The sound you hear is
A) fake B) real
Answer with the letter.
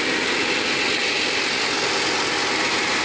B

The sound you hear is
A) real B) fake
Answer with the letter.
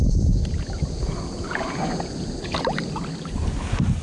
A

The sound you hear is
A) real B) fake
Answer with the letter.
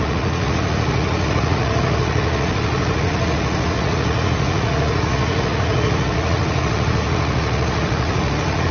B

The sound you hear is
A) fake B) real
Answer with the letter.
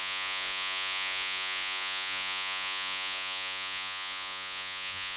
A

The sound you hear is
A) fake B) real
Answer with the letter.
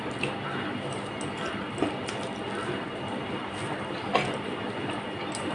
B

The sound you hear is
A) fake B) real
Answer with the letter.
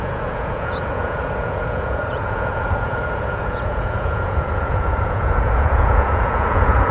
A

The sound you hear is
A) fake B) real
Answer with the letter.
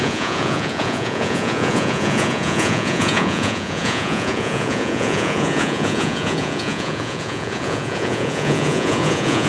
A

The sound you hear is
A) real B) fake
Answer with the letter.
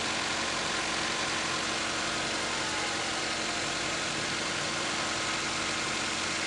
A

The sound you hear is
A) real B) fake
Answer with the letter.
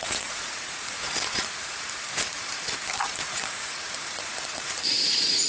B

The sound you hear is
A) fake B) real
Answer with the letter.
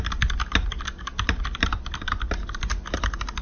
B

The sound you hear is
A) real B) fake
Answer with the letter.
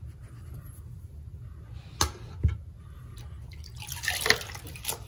A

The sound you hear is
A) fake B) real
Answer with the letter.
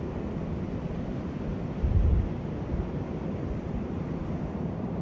B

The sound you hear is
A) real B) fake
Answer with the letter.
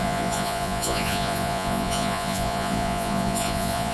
B